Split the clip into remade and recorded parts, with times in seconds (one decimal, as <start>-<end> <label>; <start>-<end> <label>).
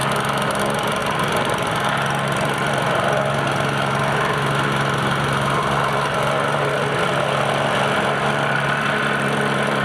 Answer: 0.0-9.8 recorded